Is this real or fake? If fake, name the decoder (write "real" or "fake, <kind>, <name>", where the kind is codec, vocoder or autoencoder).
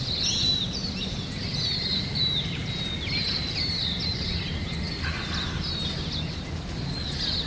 real